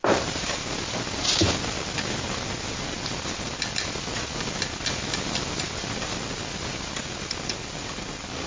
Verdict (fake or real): real